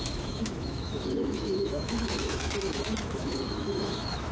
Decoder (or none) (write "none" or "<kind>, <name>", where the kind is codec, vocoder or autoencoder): autoencoder, DAC-VAE